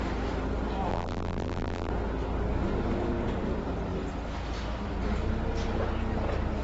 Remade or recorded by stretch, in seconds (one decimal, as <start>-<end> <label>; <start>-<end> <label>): 0.0-0.9 recorded; 0.9-1.9 remade; 1.9-6.6 recorded